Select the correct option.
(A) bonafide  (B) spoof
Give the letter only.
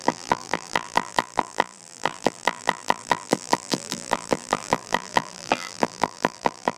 B